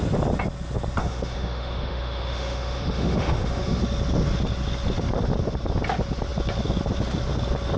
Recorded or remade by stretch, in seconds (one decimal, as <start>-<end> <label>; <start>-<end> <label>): 0.0-1.0 recorded; 1.0-3.8 remade; 3.8-7.8 recorded